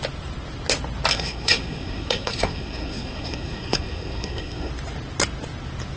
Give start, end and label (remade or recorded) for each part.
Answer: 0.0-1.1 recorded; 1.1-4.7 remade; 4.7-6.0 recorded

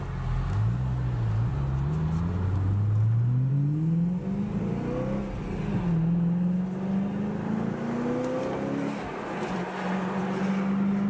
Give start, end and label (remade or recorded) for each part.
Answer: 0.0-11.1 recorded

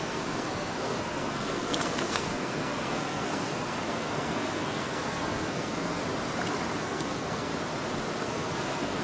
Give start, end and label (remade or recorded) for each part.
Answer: 0.0-6.0 remade; 6.0-6.8 recorded; 6.8-7.5 remade; 7.5-8.2 recorded; 8.2-9.0 remade